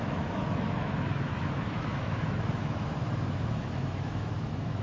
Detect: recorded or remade remade